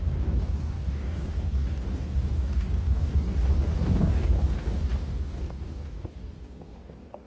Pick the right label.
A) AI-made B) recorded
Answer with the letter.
A